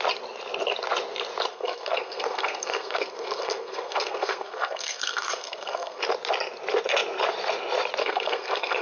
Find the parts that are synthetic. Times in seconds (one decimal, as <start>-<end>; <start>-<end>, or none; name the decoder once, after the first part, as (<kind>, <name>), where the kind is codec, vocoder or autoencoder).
1.5-6.0 (codec, SNAC); 8.0-8.8